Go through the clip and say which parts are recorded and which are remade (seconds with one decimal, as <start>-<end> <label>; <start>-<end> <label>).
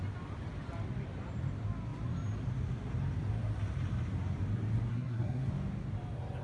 0.0-4.9 recorded; 4.9-5.5 remade; 5.5-6.4 recorded